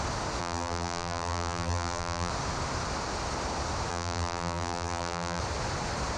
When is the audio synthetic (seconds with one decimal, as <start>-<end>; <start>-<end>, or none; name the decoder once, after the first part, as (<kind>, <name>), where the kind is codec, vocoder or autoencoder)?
0.4-2.3 (vocoder, BigVGAN v2); 3.9-5.4